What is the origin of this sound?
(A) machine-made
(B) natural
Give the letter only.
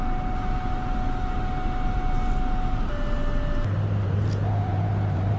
B